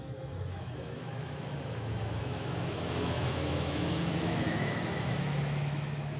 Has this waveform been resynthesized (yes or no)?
yes